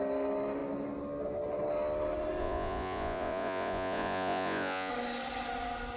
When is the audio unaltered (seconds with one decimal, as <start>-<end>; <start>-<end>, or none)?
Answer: 0.0-2.4; 4.9-6.0